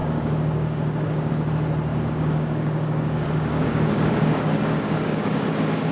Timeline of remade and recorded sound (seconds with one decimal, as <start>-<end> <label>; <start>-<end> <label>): 0.0-1.3 remade; 1.3-1.9 recorded; 1.9-5.4 remade; 5.4-5.9 recorded

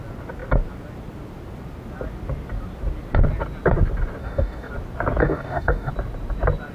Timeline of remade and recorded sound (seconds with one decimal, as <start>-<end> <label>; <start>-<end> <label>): 0.0-4.2 recorded; 4.2-4.7 remade; 4.7-5.2 recorded; 5.2-5.9 remade; 5.9-6.7 recorded